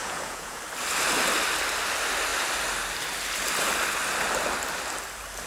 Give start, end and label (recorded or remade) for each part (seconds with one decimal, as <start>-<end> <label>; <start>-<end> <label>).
0.0-0.6 remade; 0.6-5.5 recorded